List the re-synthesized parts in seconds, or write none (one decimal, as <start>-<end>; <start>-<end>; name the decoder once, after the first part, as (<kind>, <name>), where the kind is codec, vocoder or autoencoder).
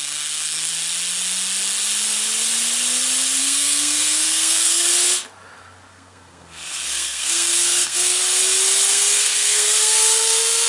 0.0-0.7 (codec, SNAC); 3.4-4.9; 5.9-8.2; 8.9-10.7